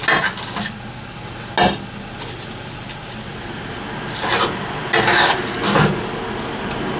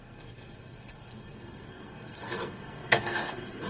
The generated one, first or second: second